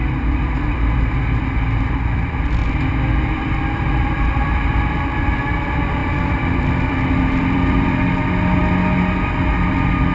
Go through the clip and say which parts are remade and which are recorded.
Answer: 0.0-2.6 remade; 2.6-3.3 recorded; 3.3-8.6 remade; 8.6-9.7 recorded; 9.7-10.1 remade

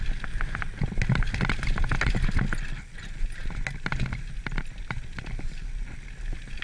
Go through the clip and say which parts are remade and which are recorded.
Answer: 0.0-6.6 recorded